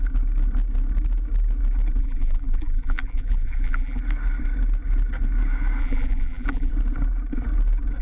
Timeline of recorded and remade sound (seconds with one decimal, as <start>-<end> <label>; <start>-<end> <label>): 0.0-2.0 recorded; 2.0-4.0 remade; 4.0-5.8 recorded; 5.8-6.7 remade; 6.7-8.0 recorded

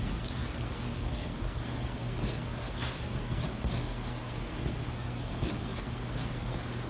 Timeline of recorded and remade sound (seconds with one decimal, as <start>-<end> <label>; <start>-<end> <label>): 0.0-6.9 remade